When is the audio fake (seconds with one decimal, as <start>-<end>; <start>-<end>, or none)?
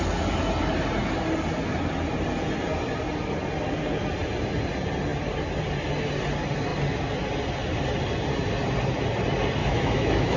9.6-10.4